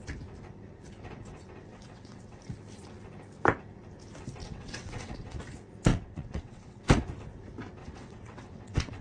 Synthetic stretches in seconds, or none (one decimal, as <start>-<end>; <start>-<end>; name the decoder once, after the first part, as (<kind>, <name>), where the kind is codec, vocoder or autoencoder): 1.7-2.4 (vocoder, WaveNeXt); 4.4-5.4; 5.9-6.8; 7.8-9.0